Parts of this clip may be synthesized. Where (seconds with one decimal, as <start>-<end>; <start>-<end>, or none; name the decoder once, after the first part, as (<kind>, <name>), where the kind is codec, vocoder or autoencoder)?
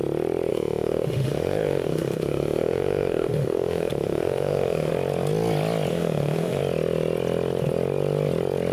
0.5-4.9 (autoencoder, DAC-VAE); 5.9-6.6